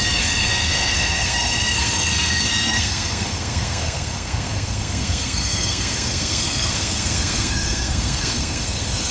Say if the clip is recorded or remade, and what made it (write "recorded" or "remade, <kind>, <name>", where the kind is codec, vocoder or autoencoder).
remade, codec, SNAC